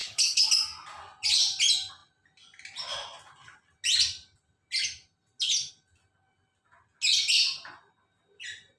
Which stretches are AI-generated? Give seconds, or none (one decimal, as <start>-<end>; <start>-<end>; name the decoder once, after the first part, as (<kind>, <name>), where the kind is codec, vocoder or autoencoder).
0.0-0.5 (codec, HILCodec)